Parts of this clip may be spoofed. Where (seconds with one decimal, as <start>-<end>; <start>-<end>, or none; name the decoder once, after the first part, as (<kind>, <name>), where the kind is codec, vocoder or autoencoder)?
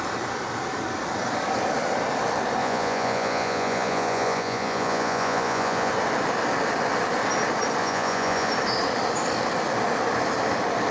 2.6-5.9 (vocoder, Vocos); 7.8-8.5